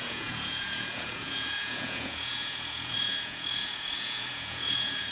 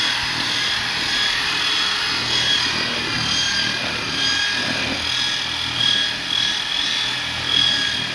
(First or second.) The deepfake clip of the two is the first